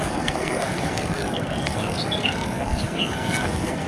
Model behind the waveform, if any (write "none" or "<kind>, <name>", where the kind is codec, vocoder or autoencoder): codec, SNAC